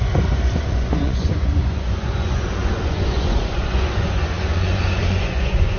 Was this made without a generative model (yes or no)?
no